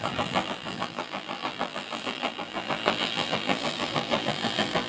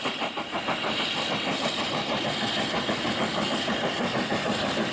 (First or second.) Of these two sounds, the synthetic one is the first